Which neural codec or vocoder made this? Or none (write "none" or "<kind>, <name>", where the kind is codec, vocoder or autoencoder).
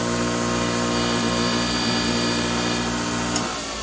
none